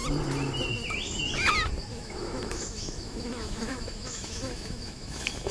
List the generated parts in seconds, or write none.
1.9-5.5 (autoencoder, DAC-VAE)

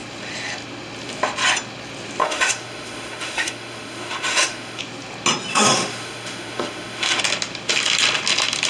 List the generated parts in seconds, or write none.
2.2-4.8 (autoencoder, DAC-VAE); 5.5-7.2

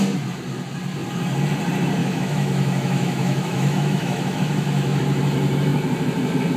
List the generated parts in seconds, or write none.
2.0-5.0 (autoencoder, DAC-VAE)

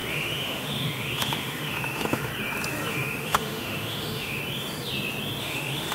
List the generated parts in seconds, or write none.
0.0-2.3 (autoencoder, DAC-VAE); 2.9-4.4; 5.4-5.9

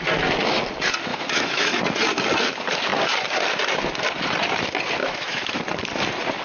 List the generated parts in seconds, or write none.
1.1-1.8 (autoencoder, DAC-VAE); 5.0-5.6

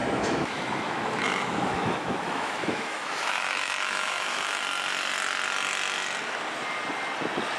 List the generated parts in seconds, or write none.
0.0-4.6 (autoencoder, DAC-VAE)